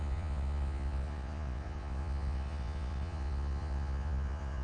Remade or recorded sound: remade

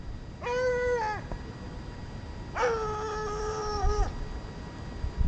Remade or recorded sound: recorded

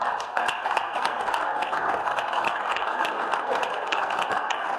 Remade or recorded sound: remade